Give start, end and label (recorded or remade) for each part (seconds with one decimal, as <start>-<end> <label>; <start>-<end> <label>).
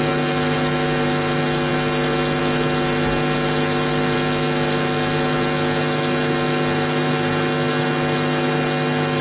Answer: 0.0-9.2 recorded